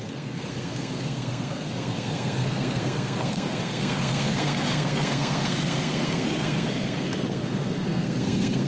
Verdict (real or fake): fake